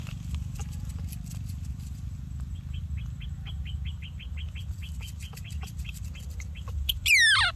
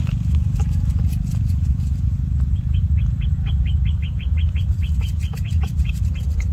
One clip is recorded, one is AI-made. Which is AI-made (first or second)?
second